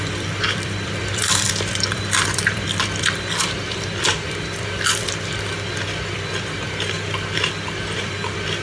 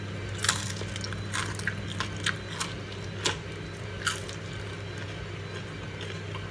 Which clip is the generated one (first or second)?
first